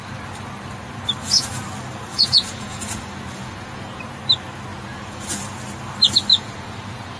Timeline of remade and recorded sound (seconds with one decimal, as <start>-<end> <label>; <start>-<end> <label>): 0.0-2.1 recorded; 2.1-4.0 remade; 4.0-4.7 recorded; 4.7-5.3 remade; 5.3-6.3 recorded; 6.3-7.2 remade